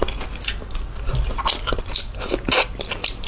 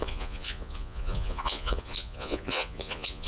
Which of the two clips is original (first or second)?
first